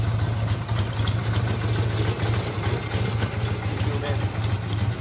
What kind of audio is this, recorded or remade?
recorded